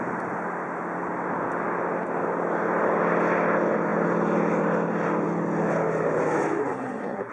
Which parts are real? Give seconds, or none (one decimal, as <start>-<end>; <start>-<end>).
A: 0.0-6.6

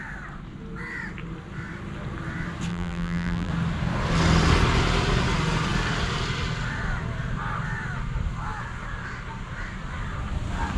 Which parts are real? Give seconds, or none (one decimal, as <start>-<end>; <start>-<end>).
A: 0.0-2.7; 3.5-10.8

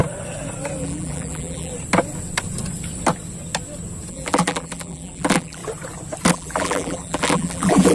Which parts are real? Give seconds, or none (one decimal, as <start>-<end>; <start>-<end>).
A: 0.0-0.8; 1.7-4.1; 5.6-6.3

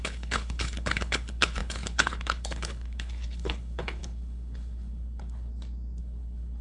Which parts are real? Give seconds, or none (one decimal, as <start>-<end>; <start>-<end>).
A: 5.5-6.0